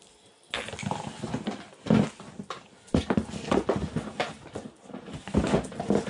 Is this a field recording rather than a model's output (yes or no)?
yes